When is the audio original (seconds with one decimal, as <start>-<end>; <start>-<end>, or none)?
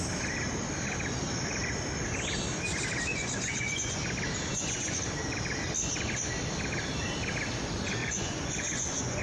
0.0-3.1; 4.0-4.5; 5.0-8.0